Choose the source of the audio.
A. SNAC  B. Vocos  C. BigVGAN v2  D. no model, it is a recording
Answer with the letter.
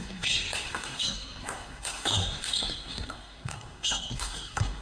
A